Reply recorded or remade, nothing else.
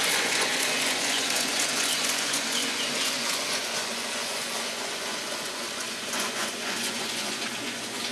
remade